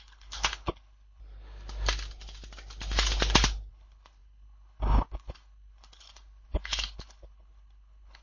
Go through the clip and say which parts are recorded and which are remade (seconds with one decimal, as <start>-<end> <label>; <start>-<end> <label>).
0.0-1.2 remade; 1.2-3.7 recorded; 3.7-8.2 remade